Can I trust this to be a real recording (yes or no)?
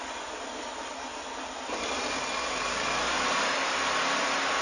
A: yes